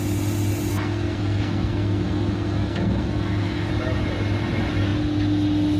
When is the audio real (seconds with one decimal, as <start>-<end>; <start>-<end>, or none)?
0.0-0.7; 3.7-5.8